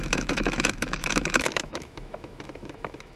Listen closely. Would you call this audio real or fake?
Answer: fake